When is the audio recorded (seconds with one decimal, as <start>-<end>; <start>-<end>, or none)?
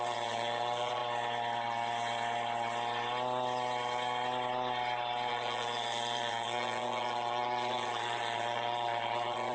1.0-5.3